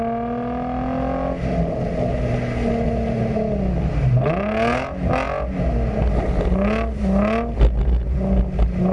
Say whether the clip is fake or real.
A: real